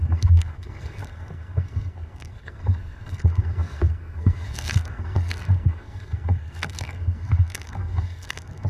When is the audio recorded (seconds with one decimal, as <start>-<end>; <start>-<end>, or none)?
none